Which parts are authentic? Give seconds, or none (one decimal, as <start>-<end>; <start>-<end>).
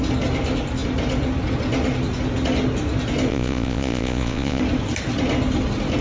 0.0-3.3; 4.6-6.0